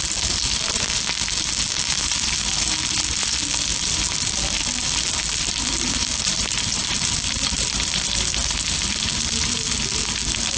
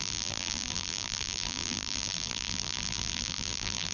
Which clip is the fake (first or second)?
second